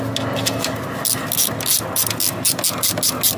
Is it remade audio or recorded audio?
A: recorded